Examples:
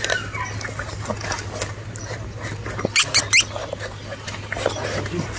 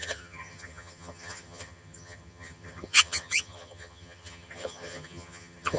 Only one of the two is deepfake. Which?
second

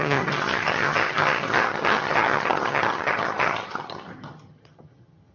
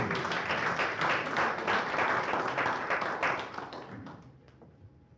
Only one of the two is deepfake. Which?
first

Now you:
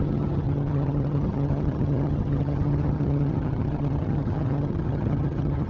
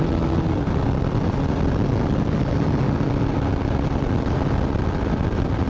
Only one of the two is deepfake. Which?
first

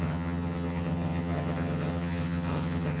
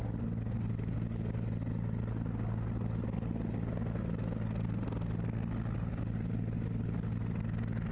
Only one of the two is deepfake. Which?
first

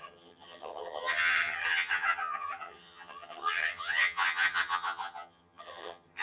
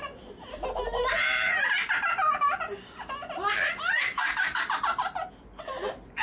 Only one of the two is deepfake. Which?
first